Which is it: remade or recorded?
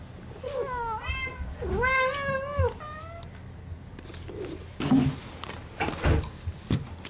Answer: recorded